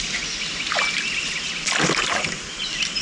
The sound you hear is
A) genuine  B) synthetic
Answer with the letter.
A